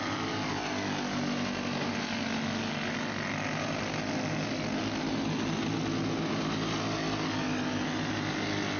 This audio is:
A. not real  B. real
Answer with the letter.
B